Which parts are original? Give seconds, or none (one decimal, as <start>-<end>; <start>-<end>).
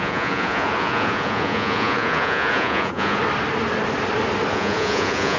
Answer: 3.2-4.5